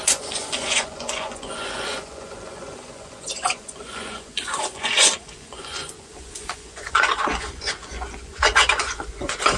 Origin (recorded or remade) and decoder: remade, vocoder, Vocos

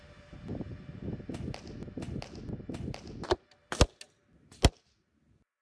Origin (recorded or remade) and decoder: recorded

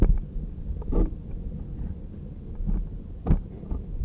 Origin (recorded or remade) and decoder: recorded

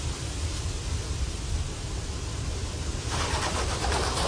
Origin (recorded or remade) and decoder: recorded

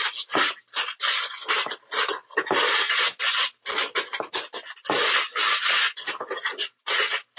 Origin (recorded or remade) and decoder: recorded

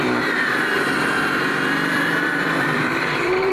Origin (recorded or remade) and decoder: remade, vocoder, BigVGAN v2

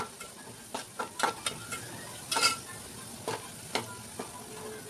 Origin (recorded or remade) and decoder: recorded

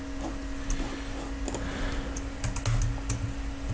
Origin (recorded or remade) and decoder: recorded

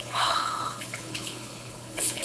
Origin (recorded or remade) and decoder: remade, codec, HILCodec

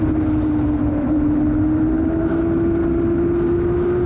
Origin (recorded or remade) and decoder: recorded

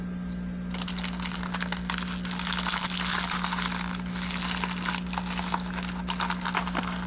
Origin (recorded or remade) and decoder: recorded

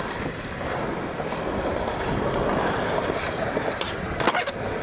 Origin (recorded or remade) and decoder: recorded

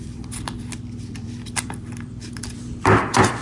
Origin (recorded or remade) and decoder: remade, vocoder, BigVGAN v2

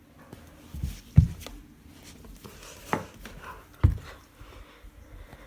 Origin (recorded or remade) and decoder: recorded